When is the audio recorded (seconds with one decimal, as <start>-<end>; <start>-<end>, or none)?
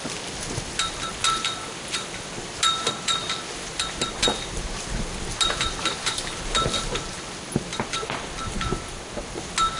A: 0.0-7.7; 8.3-9.8